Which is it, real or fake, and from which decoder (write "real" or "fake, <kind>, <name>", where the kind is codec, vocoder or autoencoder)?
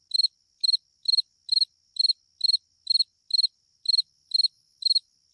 real